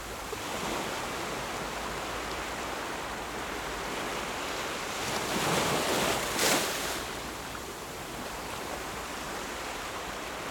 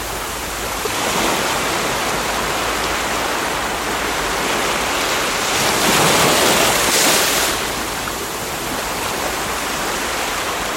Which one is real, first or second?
second